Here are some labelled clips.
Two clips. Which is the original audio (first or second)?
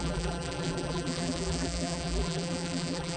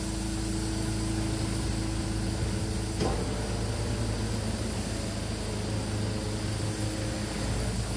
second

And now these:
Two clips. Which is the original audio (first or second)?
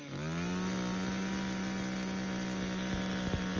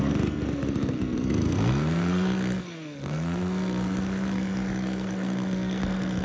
first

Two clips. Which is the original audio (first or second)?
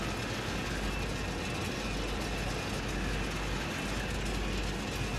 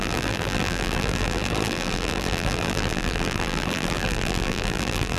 first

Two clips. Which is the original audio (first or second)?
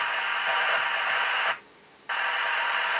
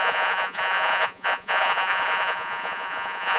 first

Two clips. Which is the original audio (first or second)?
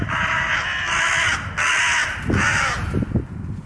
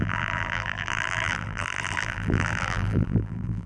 first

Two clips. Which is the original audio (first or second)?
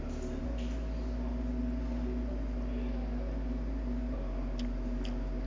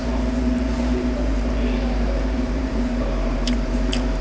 first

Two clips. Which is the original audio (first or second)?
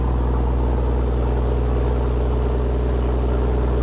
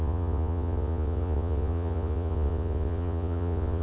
first